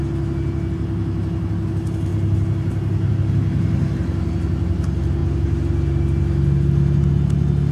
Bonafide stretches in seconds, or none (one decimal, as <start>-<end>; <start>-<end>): 0.0-7.7